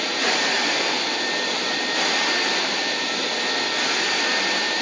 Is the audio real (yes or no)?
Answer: no